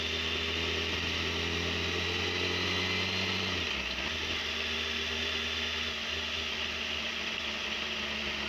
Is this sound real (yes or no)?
yes